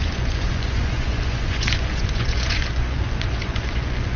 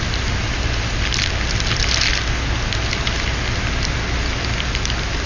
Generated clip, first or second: first